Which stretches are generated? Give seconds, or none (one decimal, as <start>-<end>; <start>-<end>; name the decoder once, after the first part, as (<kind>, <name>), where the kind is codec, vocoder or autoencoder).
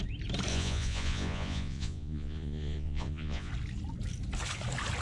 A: 0.5-3.5 (vocoder, Vocos)